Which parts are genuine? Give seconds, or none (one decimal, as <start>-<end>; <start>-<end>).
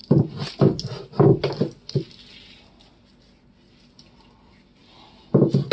0.0-5.7